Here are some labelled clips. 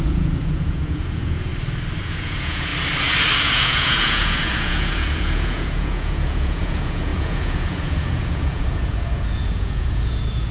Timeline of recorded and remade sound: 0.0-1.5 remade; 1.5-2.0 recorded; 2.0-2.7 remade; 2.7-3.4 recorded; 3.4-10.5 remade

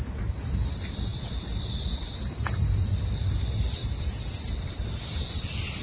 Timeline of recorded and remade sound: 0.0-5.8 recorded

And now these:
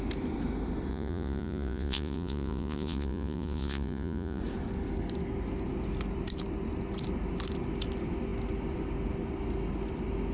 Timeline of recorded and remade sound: 0.0-0.9 recorded; 0.9-4.4 remade; 4.4-10.3 recorded

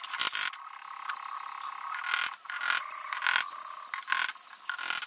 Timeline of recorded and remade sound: 0.0-5.1 recorded

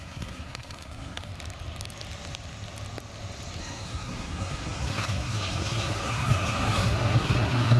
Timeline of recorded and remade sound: 0.0-1.3 remade; 1.3-3.6 recorded; 3.6-7.8 remade